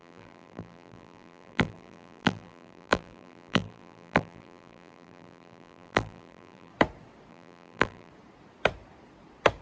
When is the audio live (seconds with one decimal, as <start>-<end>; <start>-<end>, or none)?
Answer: 6.7-7.3; 8.1-9.6